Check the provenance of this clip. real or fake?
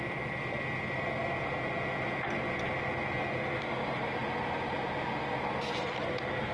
real